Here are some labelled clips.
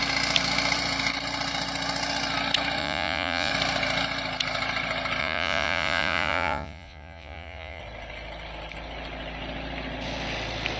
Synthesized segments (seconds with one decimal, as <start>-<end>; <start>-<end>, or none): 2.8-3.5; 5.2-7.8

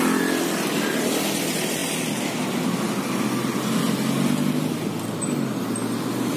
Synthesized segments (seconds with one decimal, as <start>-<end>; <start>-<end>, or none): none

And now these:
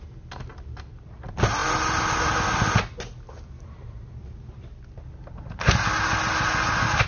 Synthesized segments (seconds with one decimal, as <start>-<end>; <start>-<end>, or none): none

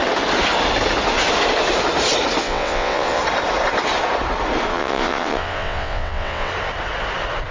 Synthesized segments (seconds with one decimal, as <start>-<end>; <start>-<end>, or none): 2.4-3.2; 4.7-6.5